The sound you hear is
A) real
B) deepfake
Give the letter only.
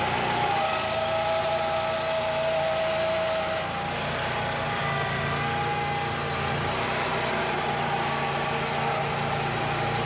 A